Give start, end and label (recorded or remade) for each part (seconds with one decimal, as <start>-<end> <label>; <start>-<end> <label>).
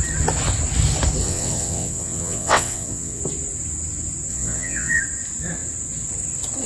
0.0-1.2 recorded; 1.2-3.2 remade; 3.2-4.3 recorded; 4.3-5.0 remade; 5.0-6.7 recorded